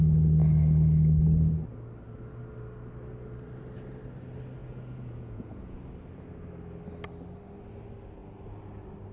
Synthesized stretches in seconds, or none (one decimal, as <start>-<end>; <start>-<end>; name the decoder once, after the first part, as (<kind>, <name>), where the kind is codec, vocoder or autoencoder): 4.6-5.8 (vocoder, Vocos)